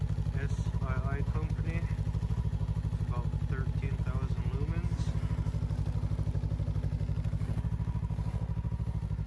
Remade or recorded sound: recorded